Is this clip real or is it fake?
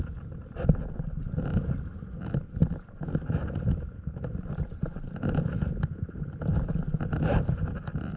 real